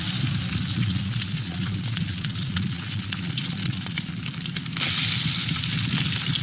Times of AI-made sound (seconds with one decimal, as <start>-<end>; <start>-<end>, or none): 0.7-4.1